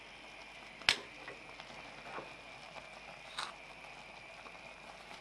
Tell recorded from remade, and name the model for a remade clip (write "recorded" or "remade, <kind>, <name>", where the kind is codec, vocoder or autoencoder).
recorded